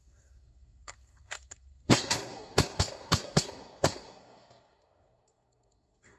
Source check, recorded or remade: remade